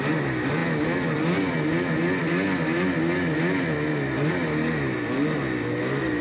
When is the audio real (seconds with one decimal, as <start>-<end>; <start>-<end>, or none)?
0.0-6.2